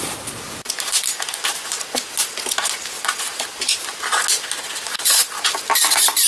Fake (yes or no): no